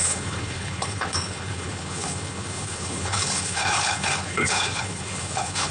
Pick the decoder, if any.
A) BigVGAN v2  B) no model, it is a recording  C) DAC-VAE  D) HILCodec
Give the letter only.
D